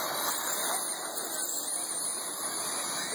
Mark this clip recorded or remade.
recorded